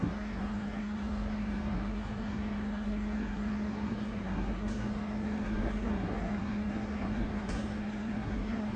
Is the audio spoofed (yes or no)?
yes